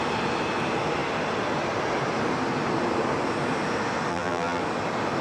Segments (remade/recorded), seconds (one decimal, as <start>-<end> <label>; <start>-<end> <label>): 0.0-4.1 recorded; 4.1-4.6 remade; 4.6-5.2 recorded